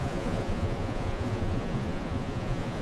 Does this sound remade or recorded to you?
remade